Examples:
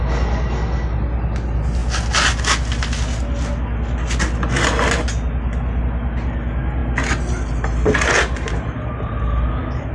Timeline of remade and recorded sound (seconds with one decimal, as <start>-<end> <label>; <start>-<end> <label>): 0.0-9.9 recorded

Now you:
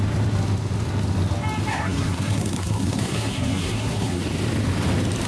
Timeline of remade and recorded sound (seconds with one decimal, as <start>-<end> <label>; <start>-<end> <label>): 0.0-1.7 recorded; 1.7-4.2 remade; 4.2-5.3 recorded

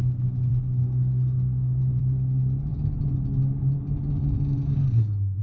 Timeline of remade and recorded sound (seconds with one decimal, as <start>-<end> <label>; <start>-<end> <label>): 0.0-0.5 recorded; 0.5-2.0 remade; 2.0-4.2 recorded; 4.2-5.4 remade